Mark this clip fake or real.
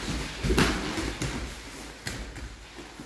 real